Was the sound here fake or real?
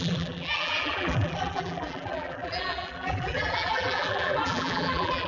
fake